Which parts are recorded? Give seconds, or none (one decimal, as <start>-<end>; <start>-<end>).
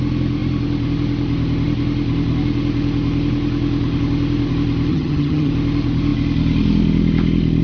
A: 0.0-4.9; 5.5-7.6